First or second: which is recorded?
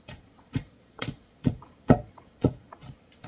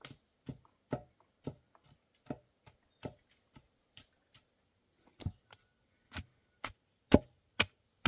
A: second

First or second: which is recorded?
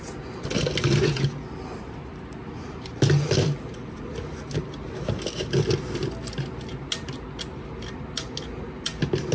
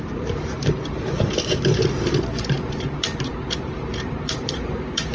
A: first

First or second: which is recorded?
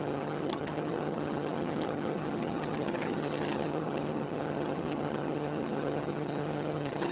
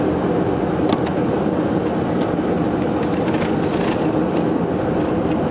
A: second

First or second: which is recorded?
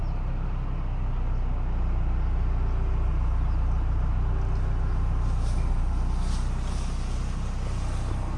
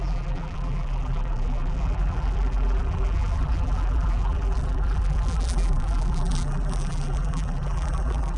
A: first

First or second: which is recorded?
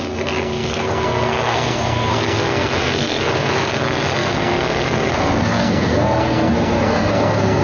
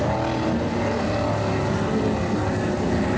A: second